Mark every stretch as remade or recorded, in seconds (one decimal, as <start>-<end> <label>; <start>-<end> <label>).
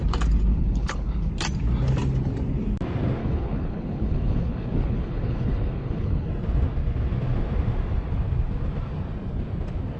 0.0-0.5 recorded; 0.5-1.3 remade; 1.3-3.2 recorded; 3.2-6.3 remade; 6.3-10.0 recorded